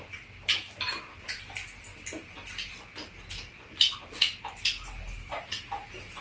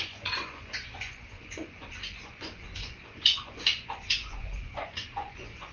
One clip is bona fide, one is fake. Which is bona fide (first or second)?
first